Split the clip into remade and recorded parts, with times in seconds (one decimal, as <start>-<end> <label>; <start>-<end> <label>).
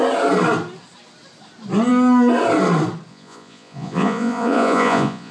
0.0-3.1 recorded; 3.1-5.3 remade